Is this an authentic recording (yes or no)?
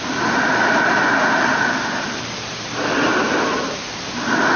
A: yes